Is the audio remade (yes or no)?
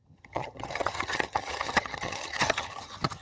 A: yes